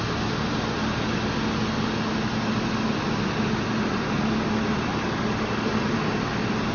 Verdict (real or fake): real